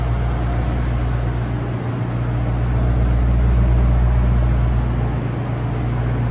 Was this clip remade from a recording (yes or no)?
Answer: no